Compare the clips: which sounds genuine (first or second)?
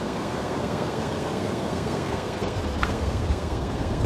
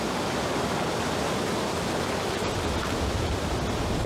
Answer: second